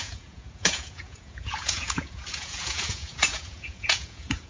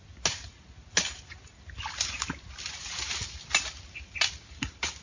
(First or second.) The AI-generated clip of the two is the first